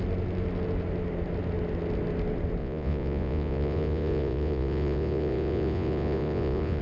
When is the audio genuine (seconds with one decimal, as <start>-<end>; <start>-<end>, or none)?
0.0-2.6